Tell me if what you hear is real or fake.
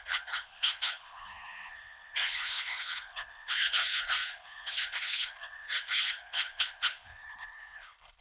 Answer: fake